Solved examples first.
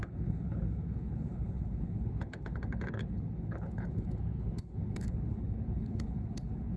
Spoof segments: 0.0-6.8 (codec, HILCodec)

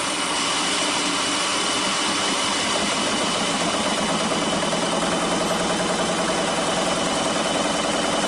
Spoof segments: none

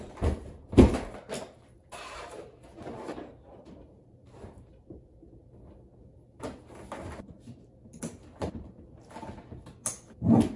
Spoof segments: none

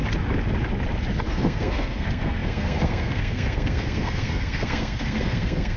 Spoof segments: 1.3-5.8 (codec, SNAC)